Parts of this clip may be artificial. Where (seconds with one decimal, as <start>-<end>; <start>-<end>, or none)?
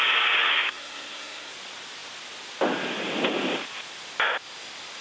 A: 0.5-1.5